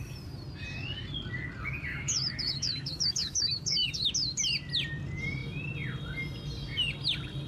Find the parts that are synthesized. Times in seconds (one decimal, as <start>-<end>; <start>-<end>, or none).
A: 1.9-4.1